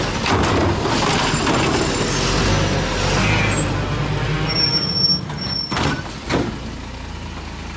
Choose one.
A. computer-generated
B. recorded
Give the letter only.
B